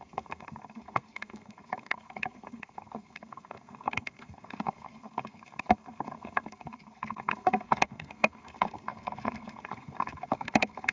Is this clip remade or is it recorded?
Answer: remade